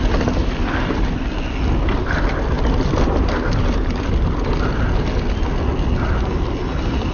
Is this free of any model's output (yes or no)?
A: yes